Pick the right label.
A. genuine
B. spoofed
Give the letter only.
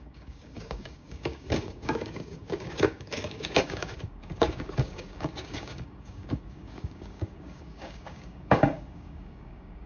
B